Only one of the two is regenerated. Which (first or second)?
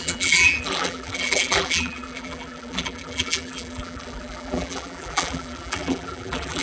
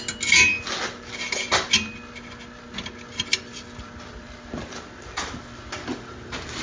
first